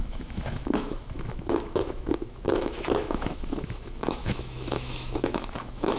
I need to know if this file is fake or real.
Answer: fake